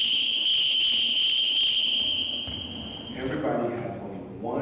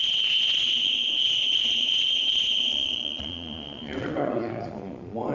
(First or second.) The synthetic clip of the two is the second